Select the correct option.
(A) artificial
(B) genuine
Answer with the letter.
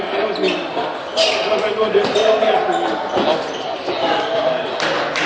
B